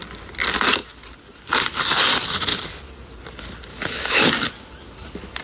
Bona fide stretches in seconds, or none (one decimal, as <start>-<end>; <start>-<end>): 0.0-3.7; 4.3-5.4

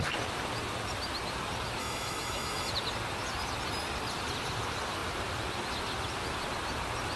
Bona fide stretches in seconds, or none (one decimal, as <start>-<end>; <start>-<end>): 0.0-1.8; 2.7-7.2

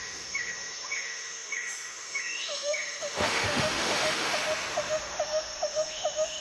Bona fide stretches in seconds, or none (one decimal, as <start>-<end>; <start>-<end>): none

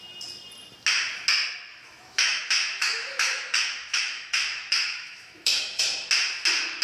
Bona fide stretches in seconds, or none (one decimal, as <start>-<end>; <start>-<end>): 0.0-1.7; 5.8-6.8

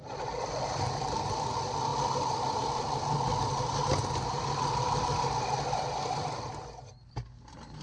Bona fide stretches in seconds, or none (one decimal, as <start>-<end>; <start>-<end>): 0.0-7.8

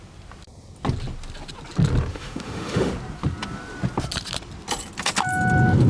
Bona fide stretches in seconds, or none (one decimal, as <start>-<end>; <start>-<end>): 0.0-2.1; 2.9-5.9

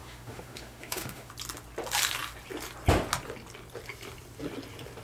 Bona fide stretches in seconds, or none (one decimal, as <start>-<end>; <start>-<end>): 1.3-5.0